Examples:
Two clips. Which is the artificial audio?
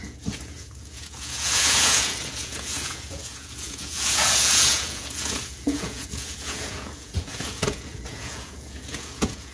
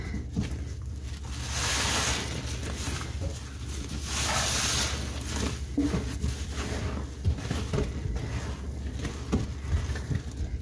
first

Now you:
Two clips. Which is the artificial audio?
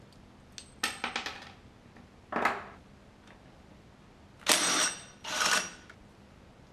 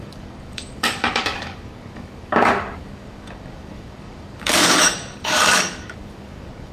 second